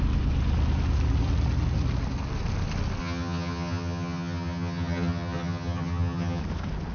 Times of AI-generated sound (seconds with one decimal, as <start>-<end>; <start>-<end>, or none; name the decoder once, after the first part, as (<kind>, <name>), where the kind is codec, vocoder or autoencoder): 3.0-6.4 (vocoder, HiFi-GAN)